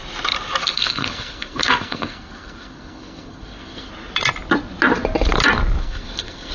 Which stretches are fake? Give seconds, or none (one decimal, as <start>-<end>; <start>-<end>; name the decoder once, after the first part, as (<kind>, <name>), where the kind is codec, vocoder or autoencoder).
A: 0.6-3.9 (codec, SNAC); 5.8-6.5